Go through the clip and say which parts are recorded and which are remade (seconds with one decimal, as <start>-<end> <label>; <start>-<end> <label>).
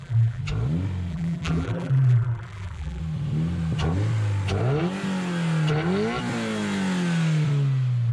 0.0-0.4 remade; 0.4-1.1 recorded; 1.1-3.0 remade; 3.0-8.1 recorded